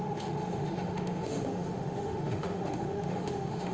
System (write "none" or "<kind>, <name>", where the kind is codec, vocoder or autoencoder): autoencoder, DAC-VAE